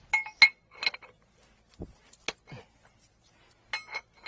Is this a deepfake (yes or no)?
no